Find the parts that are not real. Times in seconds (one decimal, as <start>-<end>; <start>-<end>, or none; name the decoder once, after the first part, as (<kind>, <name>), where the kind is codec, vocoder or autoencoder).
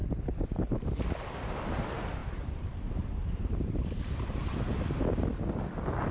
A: 0.0-1.1 (vocoder, BigVGAN v2); 2.2-4.6